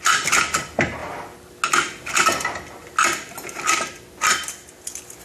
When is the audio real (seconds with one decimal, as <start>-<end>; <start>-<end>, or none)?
0.0-5.2

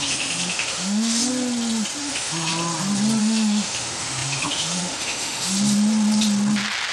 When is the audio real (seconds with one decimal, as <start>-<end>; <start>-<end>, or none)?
1.2-2.0; 2.5-3.2; 5.5-6.9

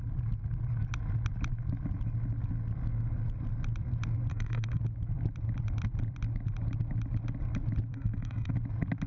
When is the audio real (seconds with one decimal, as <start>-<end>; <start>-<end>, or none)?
0.0-4.3; 4.8-7.9; 8.5-9.1

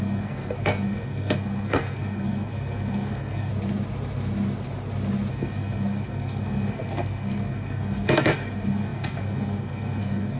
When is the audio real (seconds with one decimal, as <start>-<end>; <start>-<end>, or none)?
3.5-5.3

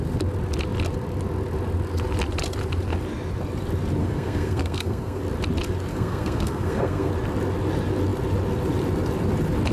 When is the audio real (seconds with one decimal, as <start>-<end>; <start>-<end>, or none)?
0.0-4.0; 5.2-5.9; 7.1-9.7

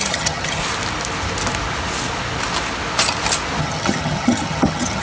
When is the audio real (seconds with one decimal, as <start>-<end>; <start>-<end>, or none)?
0.6-3.6

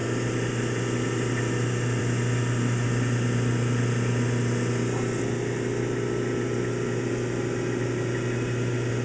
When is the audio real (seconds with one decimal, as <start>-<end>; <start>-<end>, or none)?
0.0-9.0